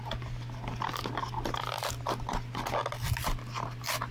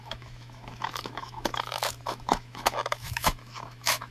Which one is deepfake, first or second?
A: second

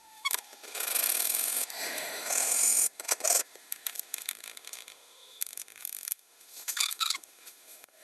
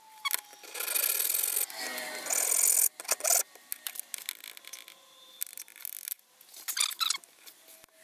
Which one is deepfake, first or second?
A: first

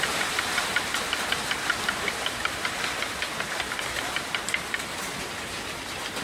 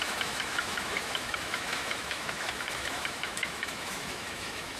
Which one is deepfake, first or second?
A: second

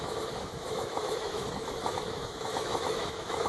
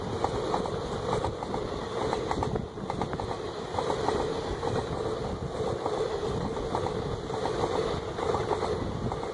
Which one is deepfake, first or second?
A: first